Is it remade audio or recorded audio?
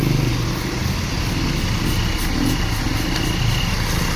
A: recorded